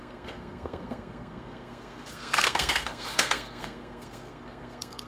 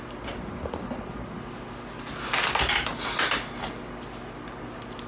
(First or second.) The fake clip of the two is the first